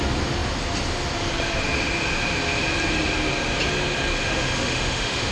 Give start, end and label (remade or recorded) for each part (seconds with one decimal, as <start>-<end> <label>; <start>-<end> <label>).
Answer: 0.0-4.2 recorded; 4.2-5.3 remade